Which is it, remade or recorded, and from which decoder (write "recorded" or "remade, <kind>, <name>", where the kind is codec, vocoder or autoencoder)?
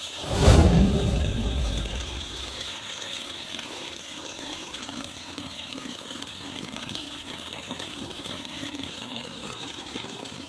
remade, codec, SNAC